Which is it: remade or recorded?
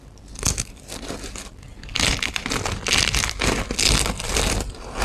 recorded